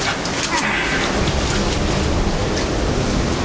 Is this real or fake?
real